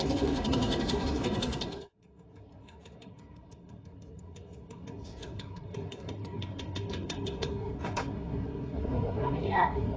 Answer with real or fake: fake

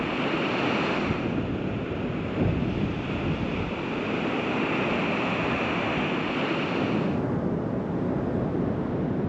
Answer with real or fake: real